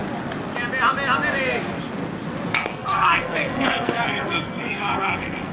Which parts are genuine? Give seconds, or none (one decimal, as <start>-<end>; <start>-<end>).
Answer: 0.0-2.5